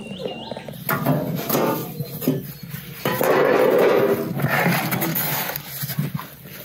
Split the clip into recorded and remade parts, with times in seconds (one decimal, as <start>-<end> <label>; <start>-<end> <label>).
0.0-5.1 recorded; 5.1-5.6 remade; 5.6-6.6 recorded